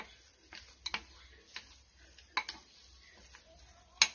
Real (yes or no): yes